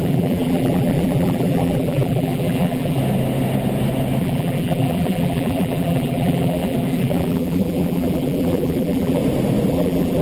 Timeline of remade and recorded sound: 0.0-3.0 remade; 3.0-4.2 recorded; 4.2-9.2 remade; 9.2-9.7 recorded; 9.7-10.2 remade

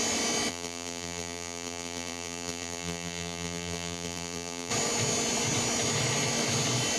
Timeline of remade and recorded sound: 0.0-0.5 recorded; 0.5-4.7 remade; 4.7-7.0 recorded

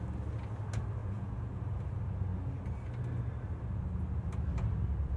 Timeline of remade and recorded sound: 0.0-1.0 recorded; 1.0-1.6 remade; 1.6-5.2 recorded

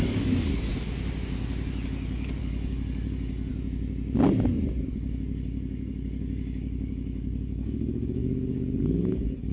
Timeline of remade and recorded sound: 0.0-0.7 remade; 0.7-2.4 recorded; 2.4-3.5 remade; 3.5-4.9 recorded; 4.9-9.5 remade

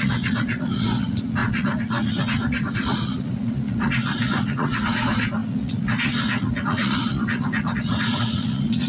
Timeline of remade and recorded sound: 0.0-8.9 remade

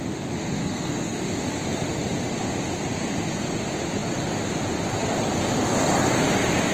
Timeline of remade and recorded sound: 0.0-0.6 recorded; 0.6-1.2 remade; 1.2-6.7 recorded

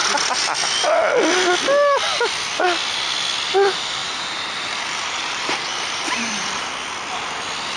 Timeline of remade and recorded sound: 0.0-4.0 recorded; 4.0-6.7 remade; 6.7-7.8 recorded

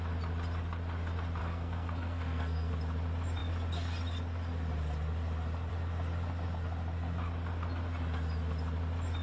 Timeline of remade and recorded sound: 0.0-1.4 recorded; 1.4-2.7 remade; 2.7-9.2 recorded